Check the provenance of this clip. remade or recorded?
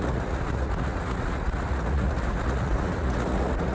remade